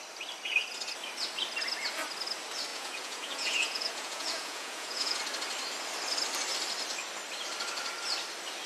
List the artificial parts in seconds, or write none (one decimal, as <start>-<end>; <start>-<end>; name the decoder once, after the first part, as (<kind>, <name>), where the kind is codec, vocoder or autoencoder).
2.7-5.2 (vocoder, Vocos)